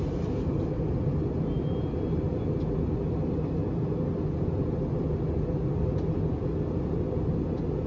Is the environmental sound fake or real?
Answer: real